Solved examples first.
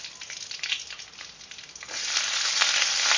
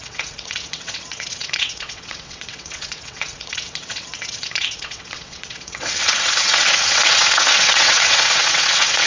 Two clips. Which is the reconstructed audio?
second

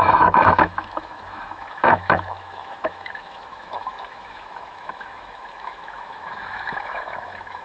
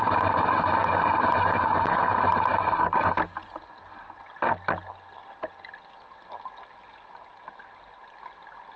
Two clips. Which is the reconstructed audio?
first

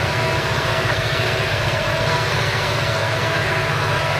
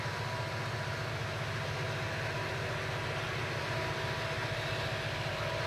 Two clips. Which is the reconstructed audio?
first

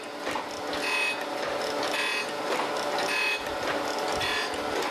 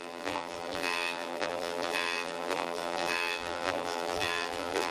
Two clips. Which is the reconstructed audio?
second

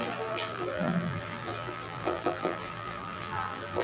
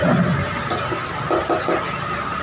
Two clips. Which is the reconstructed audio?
first